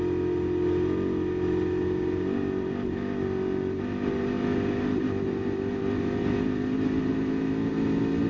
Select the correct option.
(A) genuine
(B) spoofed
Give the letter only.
A